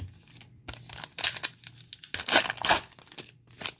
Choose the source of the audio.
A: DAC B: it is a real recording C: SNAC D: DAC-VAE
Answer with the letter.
B